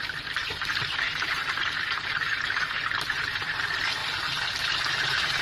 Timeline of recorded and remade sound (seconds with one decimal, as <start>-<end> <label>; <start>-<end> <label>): 0.0-0.4 recorded; 0.4-3.6 remade; 3.6-5.4 recorded